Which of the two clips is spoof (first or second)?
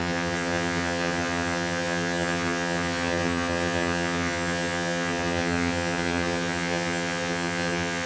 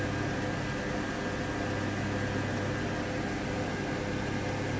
first